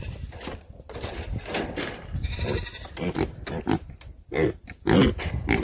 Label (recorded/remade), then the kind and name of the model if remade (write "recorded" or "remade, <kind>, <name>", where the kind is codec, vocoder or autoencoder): recorded